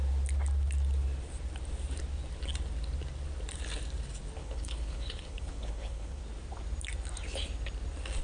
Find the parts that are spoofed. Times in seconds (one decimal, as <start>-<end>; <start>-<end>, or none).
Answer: 4.4-6.2